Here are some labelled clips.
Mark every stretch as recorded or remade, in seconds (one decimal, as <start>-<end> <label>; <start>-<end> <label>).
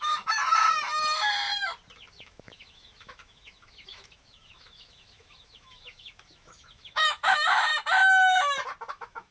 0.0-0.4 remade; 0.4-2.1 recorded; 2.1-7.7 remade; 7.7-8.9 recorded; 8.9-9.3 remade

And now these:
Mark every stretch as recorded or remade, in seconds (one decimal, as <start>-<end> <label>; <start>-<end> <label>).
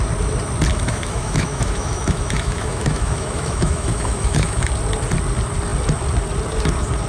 0.0-0.7 recorded; 0.7-4.7 remade; 4.7-7.1 recorded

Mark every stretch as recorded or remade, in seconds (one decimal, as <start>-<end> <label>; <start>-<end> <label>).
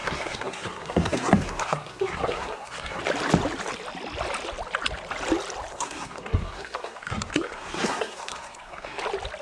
0.0-3.0 remade; 3.0-5.7 recorded; 5.7-9.0 remade; 9.0-9.4 recorded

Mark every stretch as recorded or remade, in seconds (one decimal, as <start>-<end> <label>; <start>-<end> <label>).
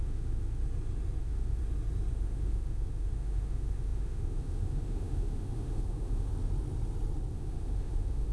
0.0-0.6 remade; 0.6-1.2 recorded; 1.2-1.6 remade; 1.6-2.1 recorded; 2.1-6.3 remade; 6.3-7.3 recorded; 7.3-8.3 remade